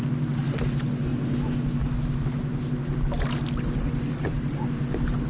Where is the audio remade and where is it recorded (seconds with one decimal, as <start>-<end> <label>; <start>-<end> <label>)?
0.0-5.3 recorded